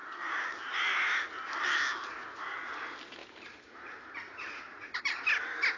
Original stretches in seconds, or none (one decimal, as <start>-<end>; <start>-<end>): 0.9-3.2; 5.2-5.8